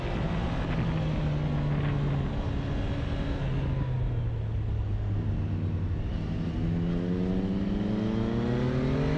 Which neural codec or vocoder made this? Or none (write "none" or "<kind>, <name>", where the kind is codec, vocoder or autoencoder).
none